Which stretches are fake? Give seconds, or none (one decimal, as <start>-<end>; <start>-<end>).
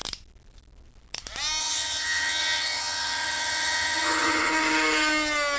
1.6-4.5